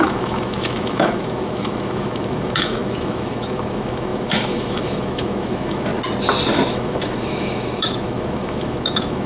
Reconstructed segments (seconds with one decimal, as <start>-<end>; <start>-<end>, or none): 0.0-5.9; 6.7-9.3